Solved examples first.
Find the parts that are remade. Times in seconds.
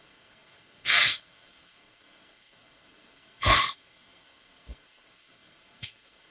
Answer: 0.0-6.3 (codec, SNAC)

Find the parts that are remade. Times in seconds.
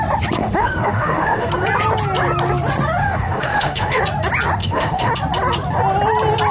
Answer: 0.4-1.5 (autoencoder, DAC-VAE); 3.0-4.0; 4.6-5.1